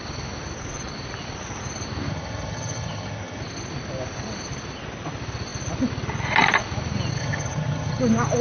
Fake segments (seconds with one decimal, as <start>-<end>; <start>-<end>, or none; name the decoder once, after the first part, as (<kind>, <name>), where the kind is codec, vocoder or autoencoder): 2.1-3.4 (vocoder, HiFi-GAN); 7.2-8.0